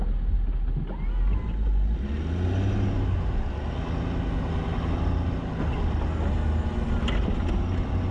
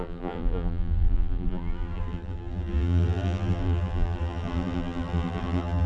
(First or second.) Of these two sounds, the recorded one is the first